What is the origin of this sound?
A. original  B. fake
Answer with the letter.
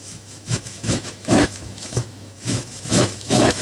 B